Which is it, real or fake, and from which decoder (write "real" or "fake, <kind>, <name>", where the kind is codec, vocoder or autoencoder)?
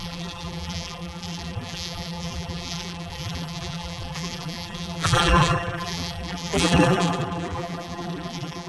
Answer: fake, vocoder, BigVGAN v2